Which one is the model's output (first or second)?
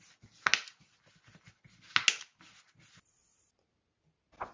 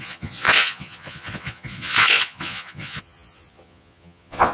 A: second